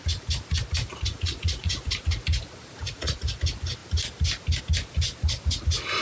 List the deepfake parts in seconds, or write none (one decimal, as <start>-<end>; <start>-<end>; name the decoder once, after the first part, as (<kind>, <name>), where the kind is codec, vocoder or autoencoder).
0.9-2.0 (vocoder, Vocos); 2.8-3.4